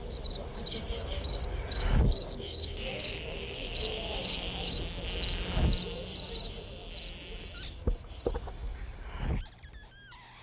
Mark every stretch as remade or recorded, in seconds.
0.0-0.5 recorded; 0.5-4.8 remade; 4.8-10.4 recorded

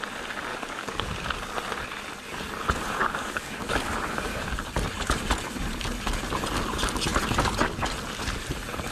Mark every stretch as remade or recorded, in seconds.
0.0-0.5 recorded; 0.5-1.1 remade; 1.1-3.0 recorded; 3.0-4.5 remade; 4.5-8.9 recorded

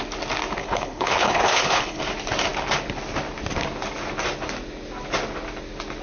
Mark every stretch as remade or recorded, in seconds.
0.0-0.6 recorded; 0.6-2.0 remade; 2.0-6.0 recorded

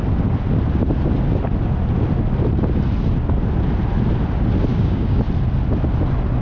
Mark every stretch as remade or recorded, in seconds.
0.0-4.7 recorded; 4.7-5.2 remade; 5.2-6.4 recorded

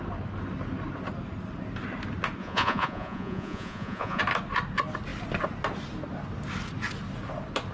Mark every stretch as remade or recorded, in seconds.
0.0-2.4 recorded; 2.4-4.2 remade; 4.2-7.7 recorded